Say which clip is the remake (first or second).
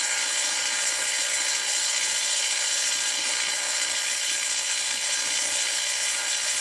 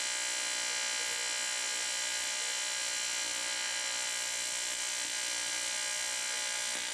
first